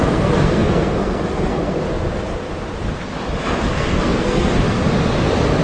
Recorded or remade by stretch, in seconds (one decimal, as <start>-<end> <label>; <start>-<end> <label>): 0.0-1.8 remade; 1.8-3.6 recorded; 3.6-4.8 remade; 4.8-5.6 recorded